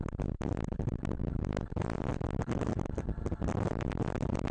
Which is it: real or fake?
real